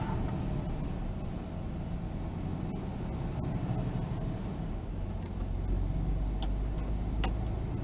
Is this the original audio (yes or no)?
yes